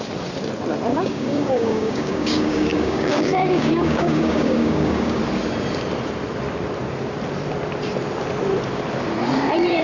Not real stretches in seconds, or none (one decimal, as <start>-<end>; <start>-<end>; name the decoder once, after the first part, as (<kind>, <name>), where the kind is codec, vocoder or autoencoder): 0.9-5.2 (codec, DAC)